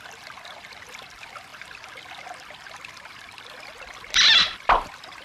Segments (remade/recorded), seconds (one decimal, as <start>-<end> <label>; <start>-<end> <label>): 0.0-5.2 remade